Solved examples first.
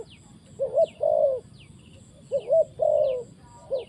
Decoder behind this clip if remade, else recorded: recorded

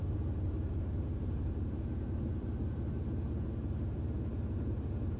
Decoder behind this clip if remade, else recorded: remade, vocoder, BigVGAN v2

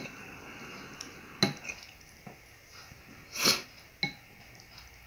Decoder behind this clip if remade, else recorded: recorded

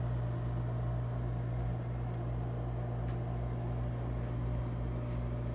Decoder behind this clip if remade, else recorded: recorded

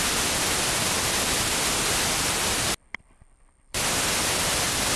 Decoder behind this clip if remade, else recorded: remade, vocoder, BigVGAN v2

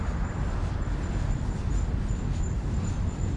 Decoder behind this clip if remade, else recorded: recorded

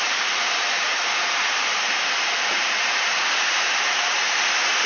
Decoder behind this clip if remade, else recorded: remade, vocoder, BigVGAN v2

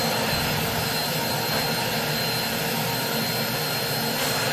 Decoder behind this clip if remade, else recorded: recorded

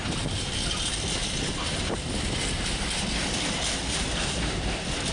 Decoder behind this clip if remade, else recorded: remade, vocoder, BigVGAN v2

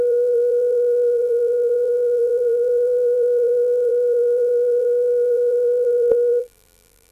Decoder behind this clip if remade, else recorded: remade, vocoder, BigVGAN v2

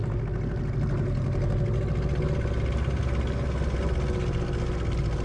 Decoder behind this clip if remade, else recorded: recorded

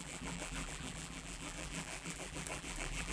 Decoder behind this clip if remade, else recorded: remade, vocoder, BigVGAN v2